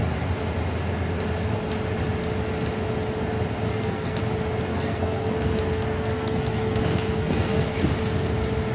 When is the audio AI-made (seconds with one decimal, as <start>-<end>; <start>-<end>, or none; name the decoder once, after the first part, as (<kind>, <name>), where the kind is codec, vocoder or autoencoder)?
3.7-4.2 (codec, SNAC); 4.7-7.8